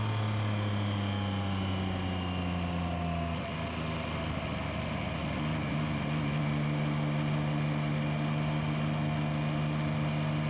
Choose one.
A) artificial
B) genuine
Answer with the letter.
B